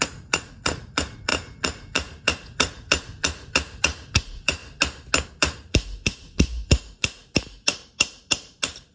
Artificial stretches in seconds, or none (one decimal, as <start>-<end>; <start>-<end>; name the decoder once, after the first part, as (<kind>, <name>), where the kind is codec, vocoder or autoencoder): 0.0-4.6 (vocoder, Vocos); 5.4-7.2